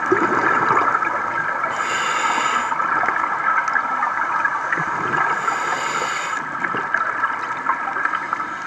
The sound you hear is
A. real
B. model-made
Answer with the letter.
A